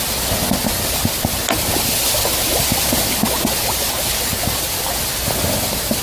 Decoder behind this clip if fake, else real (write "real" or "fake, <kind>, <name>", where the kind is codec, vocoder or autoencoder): real